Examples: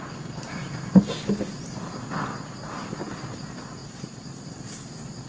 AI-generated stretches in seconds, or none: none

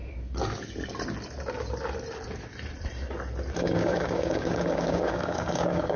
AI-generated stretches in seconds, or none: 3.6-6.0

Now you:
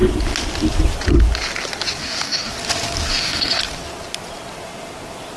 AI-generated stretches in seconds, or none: 2.0-2.5; 3.1-3.6

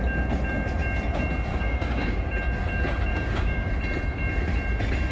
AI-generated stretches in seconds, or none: 1.5-2.2; 3.1-3.7

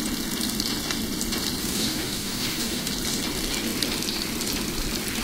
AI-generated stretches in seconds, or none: 1.6-2.9

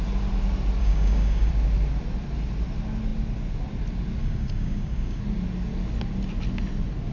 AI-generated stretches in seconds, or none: 0.8-1.5; 4.2-5.2

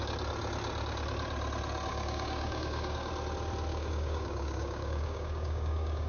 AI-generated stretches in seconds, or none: 1.9-3.1; 3.7-6.1

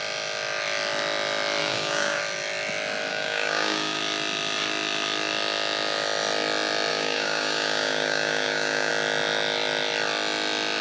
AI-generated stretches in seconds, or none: 1.6-2.2; 3.1-4.0; 6.9-8.9